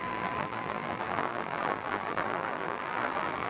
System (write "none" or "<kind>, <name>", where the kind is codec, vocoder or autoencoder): vocoder, BigVGAN v2